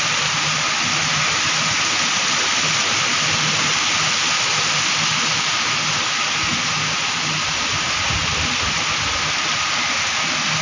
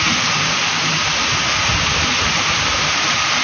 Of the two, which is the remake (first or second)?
second